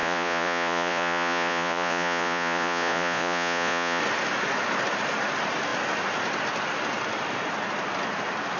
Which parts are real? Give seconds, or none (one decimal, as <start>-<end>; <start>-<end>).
4.0-8.6